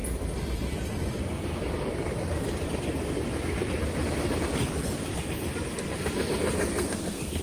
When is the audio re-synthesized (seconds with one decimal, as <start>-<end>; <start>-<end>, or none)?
6.7-7.4